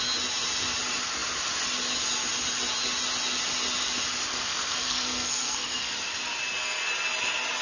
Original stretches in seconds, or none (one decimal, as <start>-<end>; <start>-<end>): 0.0-4.3; 5.9-7.6